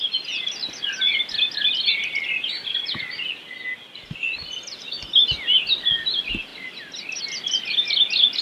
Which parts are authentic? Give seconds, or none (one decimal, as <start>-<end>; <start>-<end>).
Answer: 0.0-8.4